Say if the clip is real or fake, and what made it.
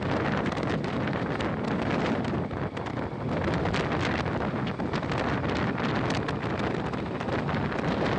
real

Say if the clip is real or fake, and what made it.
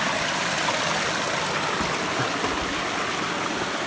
real